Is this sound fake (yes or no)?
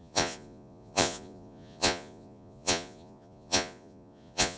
yes